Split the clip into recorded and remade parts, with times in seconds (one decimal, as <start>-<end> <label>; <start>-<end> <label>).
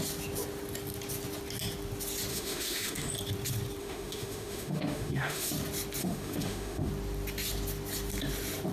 0.0-2.3 recorded; 2.3-3.1 remade; 3.1-3.8 recorded; 3.8-5.5 remade; 5.5-6.0 recorded; 6.0-6.9 remade; 6.9-8.7 recorded